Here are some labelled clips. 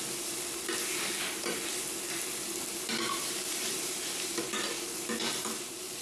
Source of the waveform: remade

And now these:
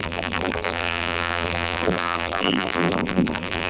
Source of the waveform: remade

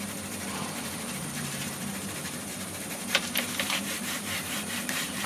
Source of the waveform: remade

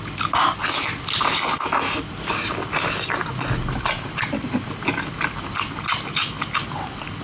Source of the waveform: recorded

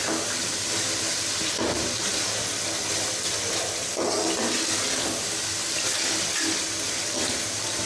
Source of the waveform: remade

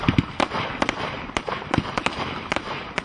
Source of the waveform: remade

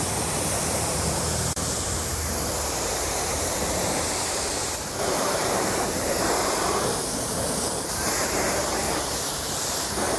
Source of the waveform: remade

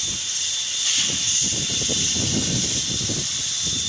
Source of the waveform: remade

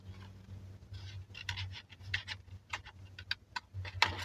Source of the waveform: recorded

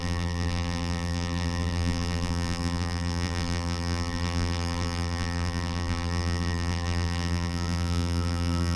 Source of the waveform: remade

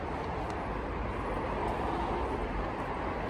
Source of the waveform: recorded